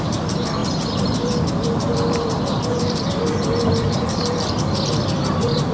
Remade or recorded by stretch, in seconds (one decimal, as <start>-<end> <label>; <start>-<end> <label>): 0.0-5.7 remade